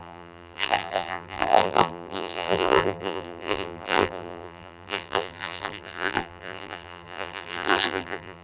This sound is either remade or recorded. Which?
remade